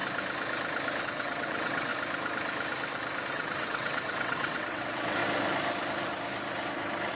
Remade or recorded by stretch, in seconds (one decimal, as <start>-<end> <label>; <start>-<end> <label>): 0.0-1.0 recorded; 1.0-1.9 remade; 1.9-3.3 recorded; 3.3-5.2 remade; 5.2-7.1 recorded